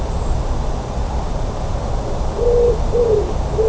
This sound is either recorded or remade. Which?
recorded